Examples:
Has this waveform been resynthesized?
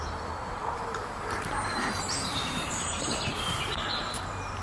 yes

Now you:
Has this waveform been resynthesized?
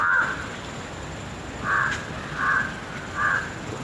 no